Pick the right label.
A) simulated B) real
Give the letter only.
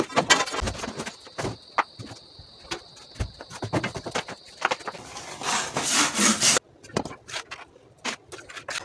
B